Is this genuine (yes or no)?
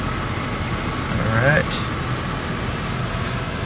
yes